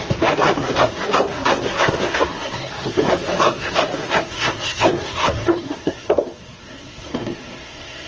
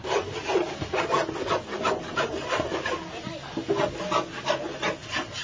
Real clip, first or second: second